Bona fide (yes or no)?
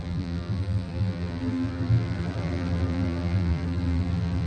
no